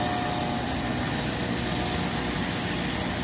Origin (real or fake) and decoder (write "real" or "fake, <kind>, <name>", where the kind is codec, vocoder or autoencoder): real